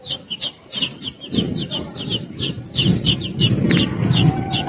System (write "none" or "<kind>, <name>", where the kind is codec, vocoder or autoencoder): vocoder, BigVGAN v2